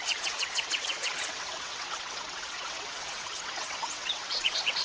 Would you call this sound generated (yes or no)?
yes